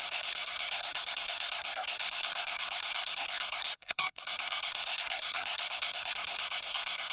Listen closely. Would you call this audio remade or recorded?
remade